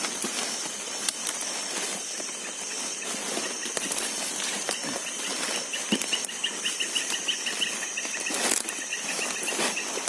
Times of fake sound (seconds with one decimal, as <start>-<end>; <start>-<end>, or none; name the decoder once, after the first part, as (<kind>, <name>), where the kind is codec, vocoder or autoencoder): none